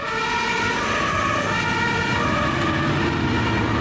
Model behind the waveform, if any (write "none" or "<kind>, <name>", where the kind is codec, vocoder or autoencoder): none